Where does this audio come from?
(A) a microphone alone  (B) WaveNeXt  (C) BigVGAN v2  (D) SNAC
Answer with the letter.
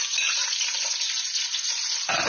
A